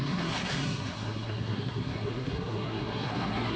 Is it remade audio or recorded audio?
remade